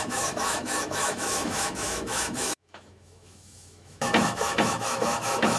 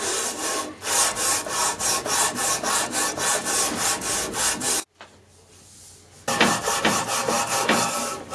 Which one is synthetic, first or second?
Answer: first